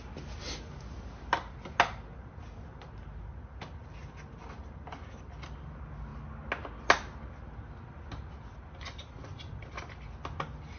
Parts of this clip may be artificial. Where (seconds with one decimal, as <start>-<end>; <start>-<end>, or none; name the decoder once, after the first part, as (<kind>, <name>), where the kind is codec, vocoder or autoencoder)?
none